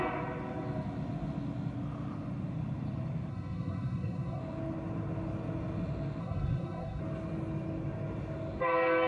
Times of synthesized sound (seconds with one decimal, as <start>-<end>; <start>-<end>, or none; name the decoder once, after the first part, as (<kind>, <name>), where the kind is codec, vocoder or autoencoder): 3.3-4.4 (codec, SNAC); 6.2-7.0